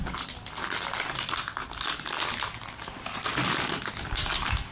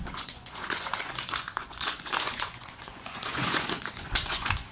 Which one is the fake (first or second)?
second